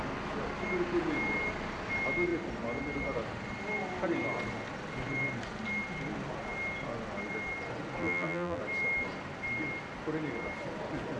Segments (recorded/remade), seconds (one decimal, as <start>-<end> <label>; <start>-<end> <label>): 0.0-8.0 recorded; 8.0-8.6 remade; 8.6-11.2 recorded